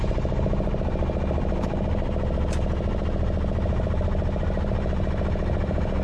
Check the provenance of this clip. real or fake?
real